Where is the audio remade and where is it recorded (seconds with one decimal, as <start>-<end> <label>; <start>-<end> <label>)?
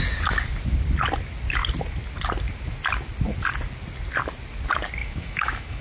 0.0-5.0 recorded; 5.0-5.8 remade